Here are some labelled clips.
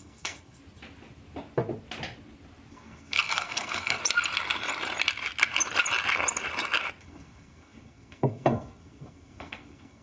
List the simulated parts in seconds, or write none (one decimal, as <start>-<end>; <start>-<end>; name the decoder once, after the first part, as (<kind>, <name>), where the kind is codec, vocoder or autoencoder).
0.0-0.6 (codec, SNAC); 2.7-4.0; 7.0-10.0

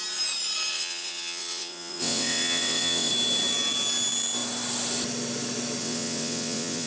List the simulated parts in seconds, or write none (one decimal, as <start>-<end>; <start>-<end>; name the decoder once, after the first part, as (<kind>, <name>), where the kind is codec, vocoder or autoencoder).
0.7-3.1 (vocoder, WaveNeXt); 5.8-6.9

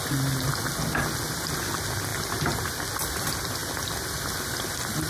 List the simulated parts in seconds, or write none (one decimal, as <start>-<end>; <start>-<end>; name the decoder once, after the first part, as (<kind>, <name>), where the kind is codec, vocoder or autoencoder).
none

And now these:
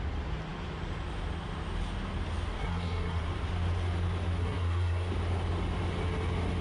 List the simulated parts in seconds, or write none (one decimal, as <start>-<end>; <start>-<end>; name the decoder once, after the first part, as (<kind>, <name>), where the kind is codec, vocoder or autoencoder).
2.6-3.2 (codec, SNAC); 4.4-5.1

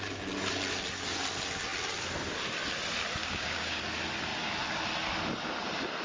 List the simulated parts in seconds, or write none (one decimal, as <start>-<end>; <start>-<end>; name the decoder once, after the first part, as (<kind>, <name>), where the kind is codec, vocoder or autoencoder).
3.2-3.8 (codec, DAC)

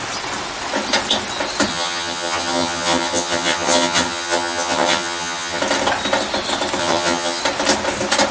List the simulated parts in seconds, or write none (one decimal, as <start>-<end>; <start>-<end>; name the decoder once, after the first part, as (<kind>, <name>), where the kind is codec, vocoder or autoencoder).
1.7-5.6 (vocoder, HiFi-GAN); 6.8-7.4